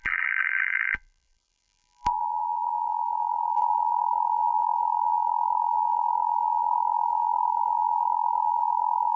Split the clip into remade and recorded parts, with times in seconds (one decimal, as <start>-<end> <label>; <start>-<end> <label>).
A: 0.0-9.2 remade

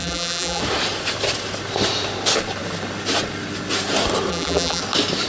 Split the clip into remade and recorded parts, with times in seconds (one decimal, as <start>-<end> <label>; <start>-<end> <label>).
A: 0.0-0.6 remade; 0.6-4.3 recorded; 4.3-4.8 remade; 4.8-5.3 recorded

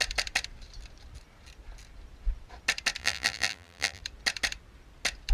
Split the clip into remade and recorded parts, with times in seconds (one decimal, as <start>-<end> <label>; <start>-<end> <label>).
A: 0.0-3.0 recorded; 3.0-4.0 remade; 4.0-5.3 recorded